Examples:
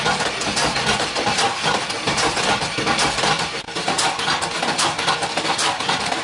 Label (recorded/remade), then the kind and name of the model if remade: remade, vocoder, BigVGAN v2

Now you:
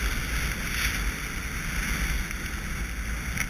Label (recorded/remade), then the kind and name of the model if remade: recorded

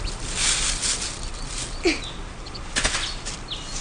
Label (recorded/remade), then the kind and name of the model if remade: recorded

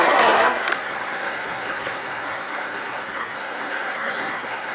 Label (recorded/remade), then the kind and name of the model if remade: remade, codec, SNAC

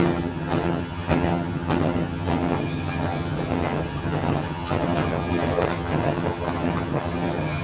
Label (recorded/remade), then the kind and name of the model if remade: remade, vocoder, HiFi-GAN